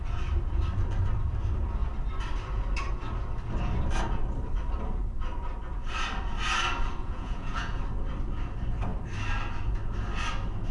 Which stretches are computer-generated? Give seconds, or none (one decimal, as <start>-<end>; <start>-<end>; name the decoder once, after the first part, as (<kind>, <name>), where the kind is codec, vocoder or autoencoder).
7.0-7.8 (vocoder, Vocos)